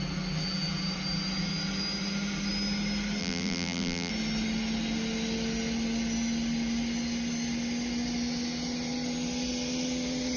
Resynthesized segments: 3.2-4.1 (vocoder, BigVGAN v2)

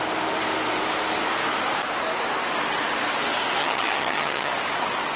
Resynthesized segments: 3.6-4.5 (vocoder, HiFi-GAN)

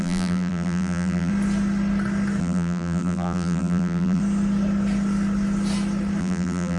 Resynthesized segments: 0.0-1.3 (vocoder, BigVGAN v2); 2.4-4.2; 6.2-6.8

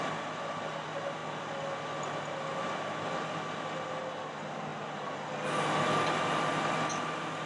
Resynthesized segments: none

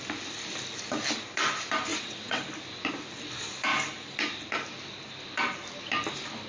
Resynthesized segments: 1.9-2.4 (vocoder, WaveNeXt)

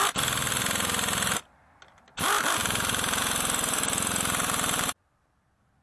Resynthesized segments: 0.0-5.8 (vocoder, BigVGAN v2)

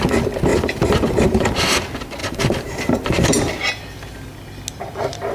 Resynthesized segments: 0.5-1.5 (vocoder, BigVGAN v2); 2.2-3.6

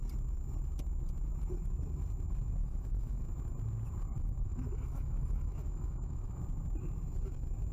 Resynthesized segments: 2.6-3.2 (autoencoder, DAC-VAE); 4.1-6.4